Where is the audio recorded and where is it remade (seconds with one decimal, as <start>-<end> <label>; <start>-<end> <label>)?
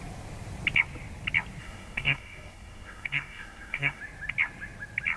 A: 0.0-1.6 recorded; 1.6-4.0 remade; 4.0-5.2 recorded